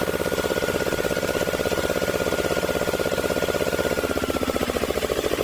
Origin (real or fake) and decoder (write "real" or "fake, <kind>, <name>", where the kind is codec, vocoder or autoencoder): real